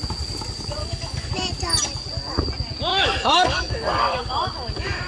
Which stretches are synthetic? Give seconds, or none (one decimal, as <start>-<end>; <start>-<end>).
0.8-1.3; 2.9-5.1